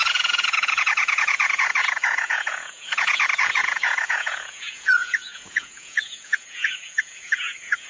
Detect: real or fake fake